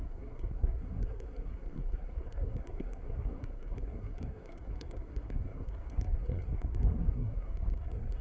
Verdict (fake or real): fake